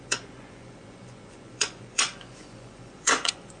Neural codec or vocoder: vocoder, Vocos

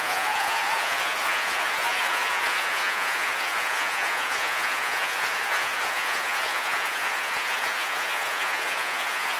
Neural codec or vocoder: vocoder, Vocos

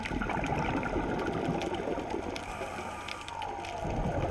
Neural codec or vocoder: none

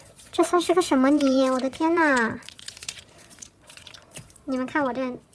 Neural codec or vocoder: vocoder, Vocos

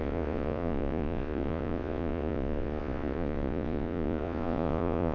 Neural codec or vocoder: vocoder, Vocos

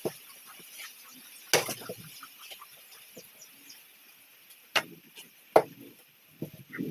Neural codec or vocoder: none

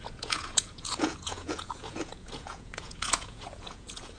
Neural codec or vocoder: vocoder, Vocos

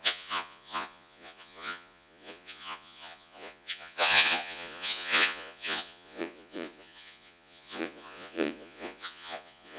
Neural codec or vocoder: vocoder, Vocos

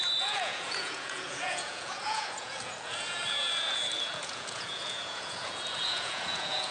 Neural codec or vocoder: vocoder, Vocos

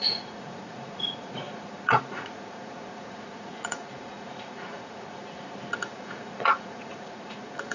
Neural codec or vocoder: vocoder, Vocos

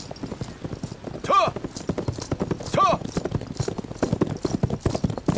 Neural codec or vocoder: none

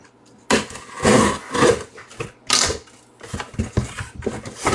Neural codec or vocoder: none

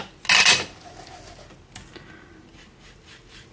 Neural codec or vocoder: none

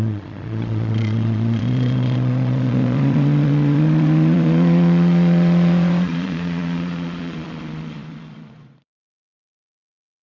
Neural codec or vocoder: vocoder, Vocos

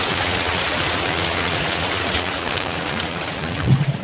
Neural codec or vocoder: vocoder, Vocos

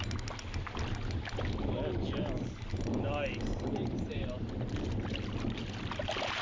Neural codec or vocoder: none